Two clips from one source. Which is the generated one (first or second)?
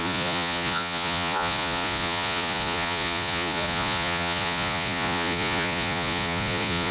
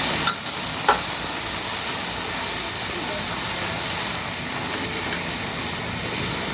first